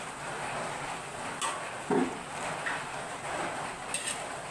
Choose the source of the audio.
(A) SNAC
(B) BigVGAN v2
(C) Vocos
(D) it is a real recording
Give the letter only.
D